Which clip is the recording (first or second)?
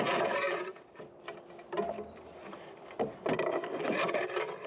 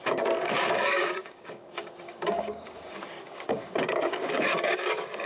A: first